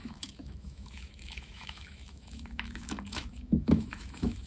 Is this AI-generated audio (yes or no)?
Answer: yes